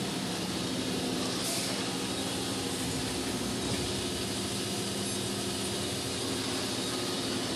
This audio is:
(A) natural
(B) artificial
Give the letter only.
A